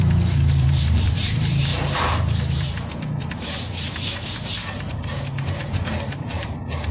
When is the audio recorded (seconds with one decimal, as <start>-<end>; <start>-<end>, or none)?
4.6-5.4

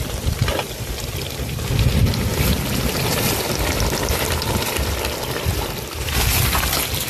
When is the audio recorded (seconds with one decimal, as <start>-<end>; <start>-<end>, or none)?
0.0-7.1

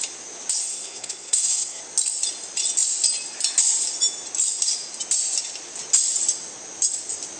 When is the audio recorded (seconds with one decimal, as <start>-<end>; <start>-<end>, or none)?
0.0-0.6; 1.8-7.4

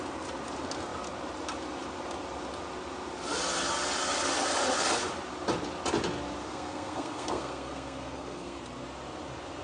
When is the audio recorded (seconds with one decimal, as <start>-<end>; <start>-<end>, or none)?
0.0-6.4; 8.6-9.6